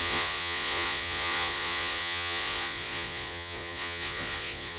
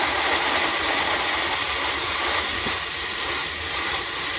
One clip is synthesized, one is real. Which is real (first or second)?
second